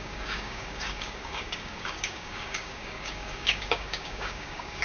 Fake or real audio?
fake